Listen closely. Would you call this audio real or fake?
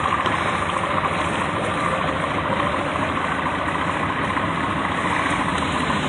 real